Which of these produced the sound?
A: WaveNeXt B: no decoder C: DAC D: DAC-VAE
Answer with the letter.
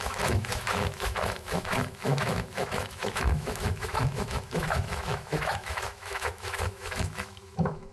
D